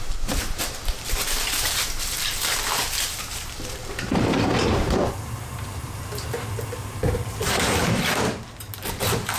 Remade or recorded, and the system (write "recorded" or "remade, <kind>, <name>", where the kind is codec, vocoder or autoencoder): remade, vocoder, BigVGAN v2